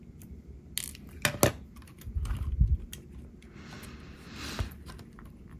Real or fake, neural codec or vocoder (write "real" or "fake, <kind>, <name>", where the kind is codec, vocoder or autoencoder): real